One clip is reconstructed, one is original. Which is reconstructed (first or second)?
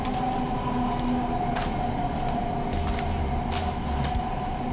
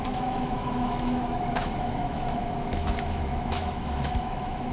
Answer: second